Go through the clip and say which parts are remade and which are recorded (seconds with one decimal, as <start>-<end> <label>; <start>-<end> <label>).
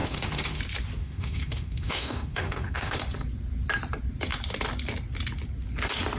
0.0-0.6 remade; 0.6-1.0 recorded; 1.0-3.0 remade; 3.0-6.2 recorded